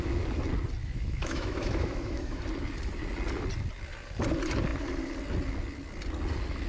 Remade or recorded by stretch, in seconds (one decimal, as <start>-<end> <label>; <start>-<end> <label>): 0.0-0.8 recorded; 0.8-2.4 remade; 2.4-6.7 recorded